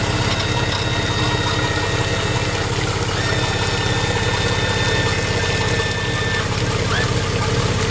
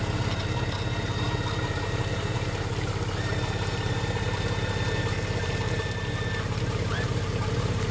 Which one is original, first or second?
first